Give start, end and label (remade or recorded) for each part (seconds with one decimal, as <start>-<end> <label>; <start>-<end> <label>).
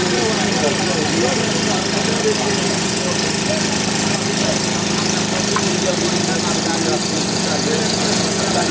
0.0-2.6 recorded; 2.6-3.1 remade; 3.1-7.0 recorded; 7.0-8.7 remade